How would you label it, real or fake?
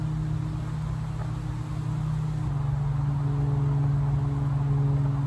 real